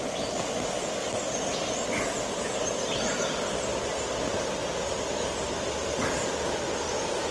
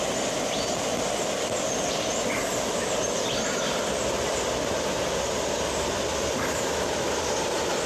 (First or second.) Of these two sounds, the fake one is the second